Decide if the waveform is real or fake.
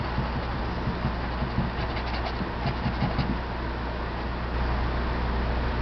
real